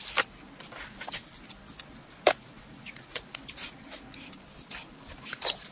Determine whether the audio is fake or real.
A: real